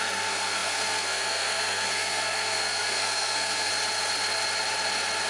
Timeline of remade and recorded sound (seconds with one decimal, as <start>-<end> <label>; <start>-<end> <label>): 0.0-3.7 remade; 3.7-5.3 recorded